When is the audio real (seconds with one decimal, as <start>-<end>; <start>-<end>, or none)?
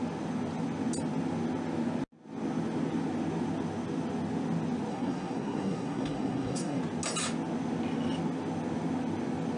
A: 0.0-4.9; 6.8-9.6